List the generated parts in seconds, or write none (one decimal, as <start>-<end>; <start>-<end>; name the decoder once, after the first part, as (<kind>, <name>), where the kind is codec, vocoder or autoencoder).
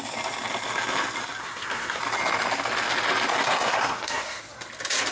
1.4-2.0 (codec, SNAC); 3.3-4.4